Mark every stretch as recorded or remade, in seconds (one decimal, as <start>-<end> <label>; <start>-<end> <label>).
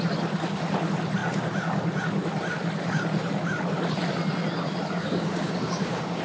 0.0-5.0 recorded; 5.0-6.2 remade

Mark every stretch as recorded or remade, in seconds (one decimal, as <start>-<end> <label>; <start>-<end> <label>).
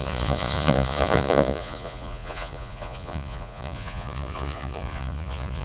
0.0-5.6 remade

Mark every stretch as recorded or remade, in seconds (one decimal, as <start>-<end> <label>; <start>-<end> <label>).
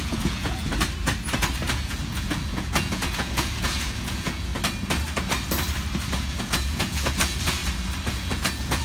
0.0-0.7 remade; 0.7-1.7 recorded; 1.7-4.5 remade; 4.5-6.1 recorded; 6.1-7.6 remade; 7.6-8.1 recorded; 8.1-8.8 remade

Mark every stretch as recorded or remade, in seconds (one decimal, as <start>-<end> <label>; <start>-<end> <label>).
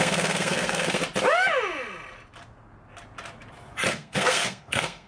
0.0-1.0 remade; 1.0-3.9 recorded; 3.9-5.1 remade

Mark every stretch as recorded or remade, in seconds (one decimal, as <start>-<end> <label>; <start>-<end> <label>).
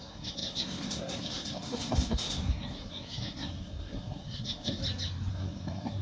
0.0-4.8 remade; 4.8-5.3 recorded; 5.3-6.0 remade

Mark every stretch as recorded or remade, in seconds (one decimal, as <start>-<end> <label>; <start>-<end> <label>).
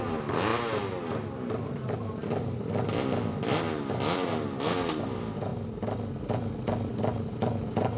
0.0-8.0 recorded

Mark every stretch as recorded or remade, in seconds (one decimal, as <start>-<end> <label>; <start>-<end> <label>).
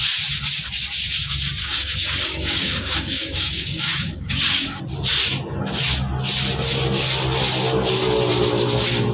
0.0-1.6 recorded; 1.6-4.8 remade; 4.8-9.1 recorded